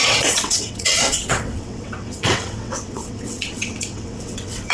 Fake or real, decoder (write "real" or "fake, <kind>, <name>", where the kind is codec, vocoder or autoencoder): fake, vocoder, WaveNeXt